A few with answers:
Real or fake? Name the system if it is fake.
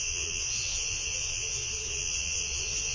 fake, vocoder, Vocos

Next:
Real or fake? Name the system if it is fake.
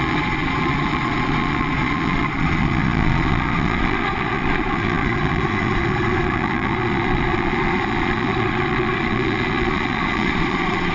fake, vocoder, Vocos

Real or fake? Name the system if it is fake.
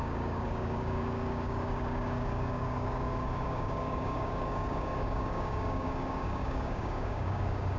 fake, codec, DAC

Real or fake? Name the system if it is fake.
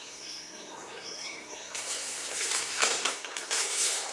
fake, codec, SNAC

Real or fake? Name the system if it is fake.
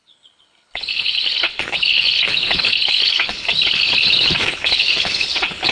fake, codec, HILCodec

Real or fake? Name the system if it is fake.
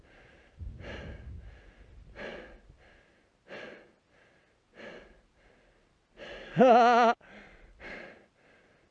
real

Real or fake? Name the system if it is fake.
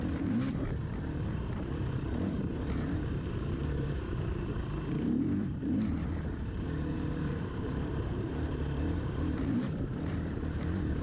fake, vocoder, BigVGAN v2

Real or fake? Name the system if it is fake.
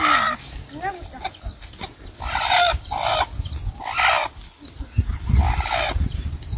real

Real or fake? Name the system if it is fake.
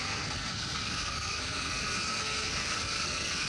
fake, codec, SNAC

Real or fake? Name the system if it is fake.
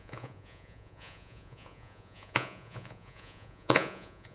fake, vocoder, Vocos